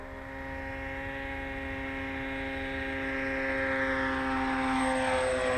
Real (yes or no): yes